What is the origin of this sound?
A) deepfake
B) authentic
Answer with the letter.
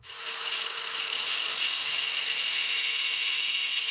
A